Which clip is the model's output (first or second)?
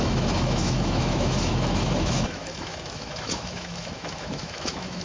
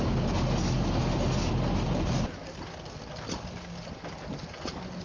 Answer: first